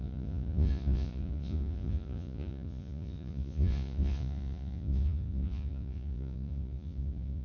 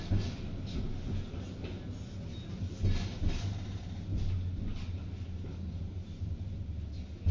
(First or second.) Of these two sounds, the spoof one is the first